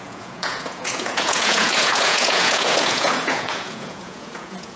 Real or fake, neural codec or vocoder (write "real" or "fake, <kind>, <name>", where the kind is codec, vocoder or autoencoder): fake, vocoder, Vocos